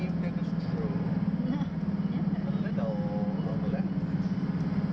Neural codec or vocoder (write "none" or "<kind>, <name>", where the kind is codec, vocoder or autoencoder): none